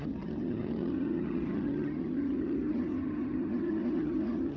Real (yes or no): no